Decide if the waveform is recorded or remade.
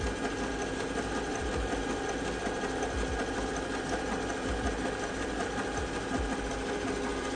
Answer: recorded